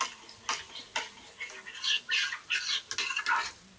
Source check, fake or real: real